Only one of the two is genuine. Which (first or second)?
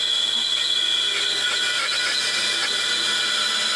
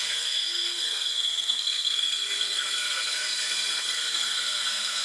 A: first